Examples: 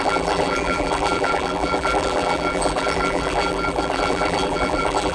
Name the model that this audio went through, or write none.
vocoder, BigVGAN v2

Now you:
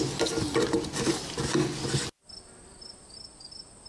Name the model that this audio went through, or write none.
none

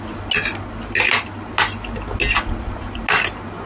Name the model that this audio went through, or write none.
none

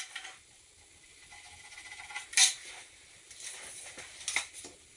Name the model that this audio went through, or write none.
none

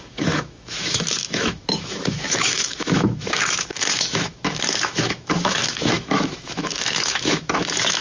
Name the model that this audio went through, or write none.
autoencoder, DAC-VAE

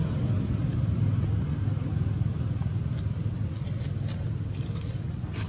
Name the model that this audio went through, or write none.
none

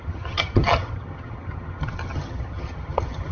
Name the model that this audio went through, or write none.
vocoder, HiFi-GAN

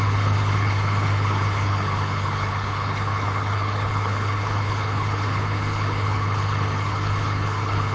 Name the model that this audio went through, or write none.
codec, HILCodec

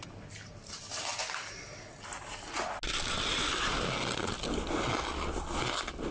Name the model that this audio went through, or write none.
none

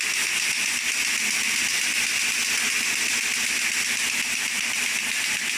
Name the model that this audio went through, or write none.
none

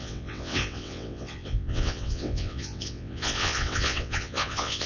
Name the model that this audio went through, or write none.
vocoder, WaveNeXt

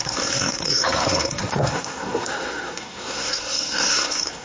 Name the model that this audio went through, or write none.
codec, SNAC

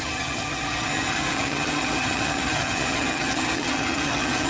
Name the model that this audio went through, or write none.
vocoder, HiFi-GAN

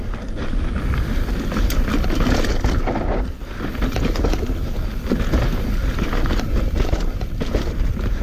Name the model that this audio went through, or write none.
none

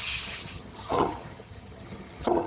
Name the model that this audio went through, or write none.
vocoder, HiFi-GAN